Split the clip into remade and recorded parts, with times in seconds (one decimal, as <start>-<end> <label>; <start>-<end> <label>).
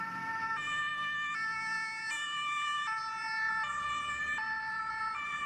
0.0-5.5 recorded